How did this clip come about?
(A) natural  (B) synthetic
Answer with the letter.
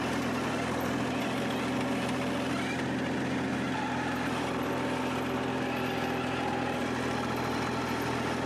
A